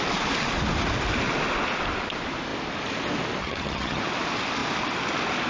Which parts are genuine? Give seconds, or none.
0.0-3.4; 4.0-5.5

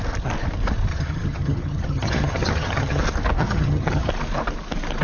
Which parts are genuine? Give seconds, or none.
0.0-0.9; 3.0-3.4; 4.1-5.0

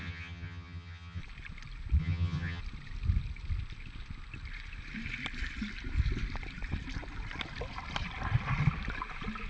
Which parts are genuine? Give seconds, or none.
1.2-2.0; 2.6-9.5

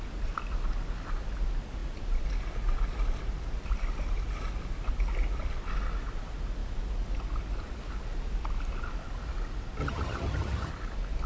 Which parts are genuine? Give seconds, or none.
0.0-9.8; 10.7-11.3